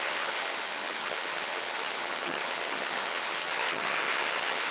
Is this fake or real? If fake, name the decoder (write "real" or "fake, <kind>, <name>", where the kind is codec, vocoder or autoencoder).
fake, vocoder, HiFi-GAN